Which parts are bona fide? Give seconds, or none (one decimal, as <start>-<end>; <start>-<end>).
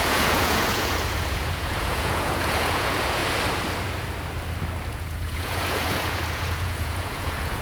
3.2-4.9